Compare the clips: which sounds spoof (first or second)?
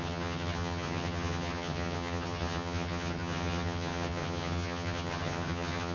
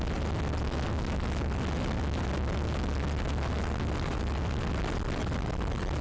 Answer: first